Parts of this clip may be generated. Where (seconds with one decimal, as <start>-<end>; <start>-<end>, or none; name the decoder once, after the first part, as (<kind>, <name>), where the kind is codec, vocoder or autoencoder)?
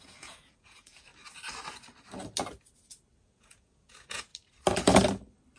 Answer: 0.0-1.1 (vocoder, Vocos); 3.2-4.3